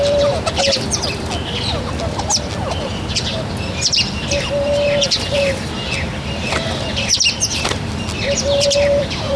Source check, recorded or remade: remade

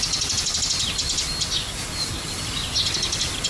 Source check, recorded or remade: recorded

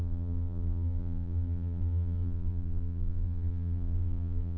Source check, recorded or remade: remade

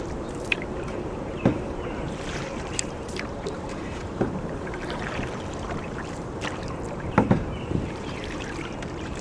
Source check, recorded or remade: remade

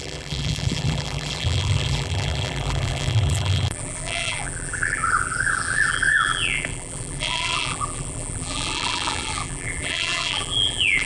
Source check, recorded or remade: remade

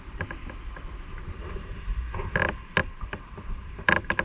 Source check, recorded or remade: recorded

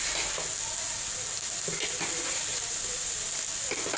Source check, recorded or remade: recorded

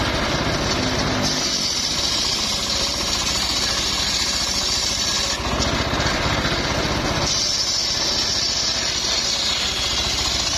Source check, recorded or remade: recorded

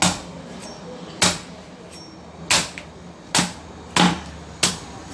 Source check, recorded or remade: recorded